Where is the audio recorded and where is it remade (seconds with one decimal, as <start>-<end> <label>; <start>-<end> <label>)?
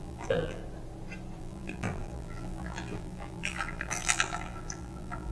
0.0-0.6 remade; 0.6-1.4 recorded; 1.4-5.3 remade